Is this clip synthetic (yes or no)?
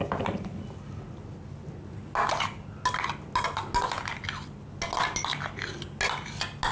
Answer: no